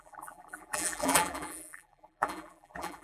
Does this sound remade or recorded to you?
remade